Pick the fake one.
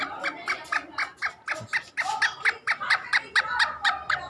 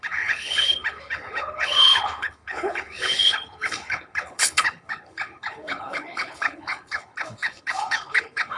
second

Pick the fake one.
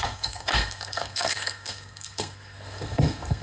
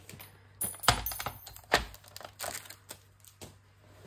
first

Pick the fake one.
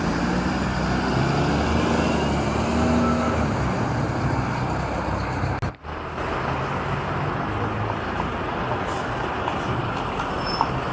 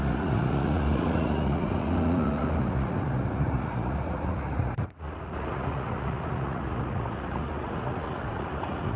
second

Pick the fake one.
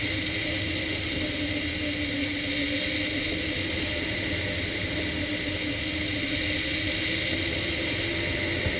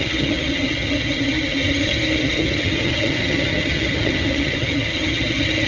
second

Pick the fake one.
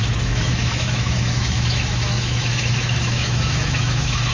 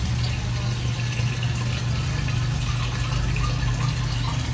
first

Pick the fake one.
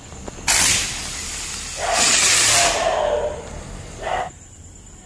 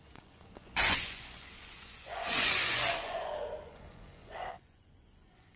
second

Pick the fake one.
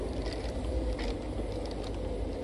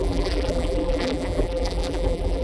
second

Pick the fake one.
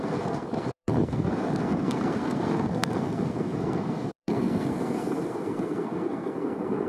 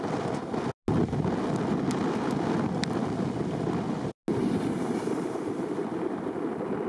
first